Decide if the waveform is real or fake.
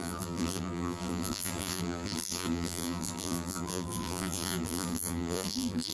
fake